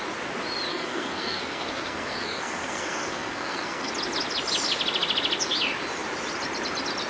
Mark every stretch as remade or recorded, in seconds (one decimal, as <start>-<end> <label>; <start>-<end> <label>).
0.0-0.7 recorded; 0.7-3.9 remade; 3.9-7.1 recorded